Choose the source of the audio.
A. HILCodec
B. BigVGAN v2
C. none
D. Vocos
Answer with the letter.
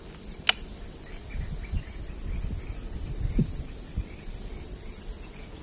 C